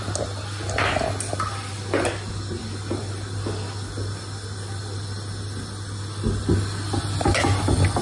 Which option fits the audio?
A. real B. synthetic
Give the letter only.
A